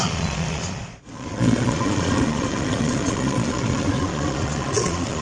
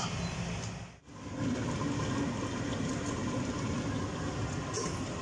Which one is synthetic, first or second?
first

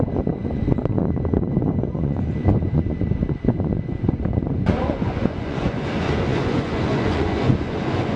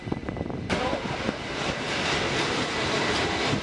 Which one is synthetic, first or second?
first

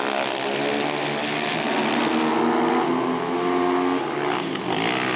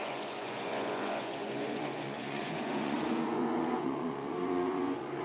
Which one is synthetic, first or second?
second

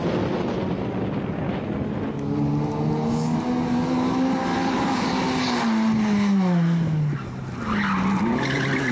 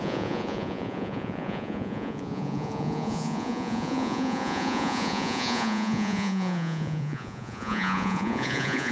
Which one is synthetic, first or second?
second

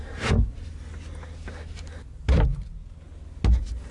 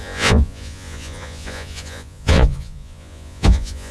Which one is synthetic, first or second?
second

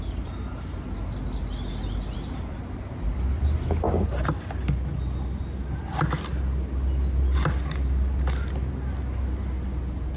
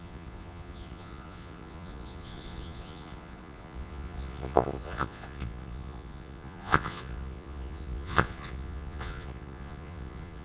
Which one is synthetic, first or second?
second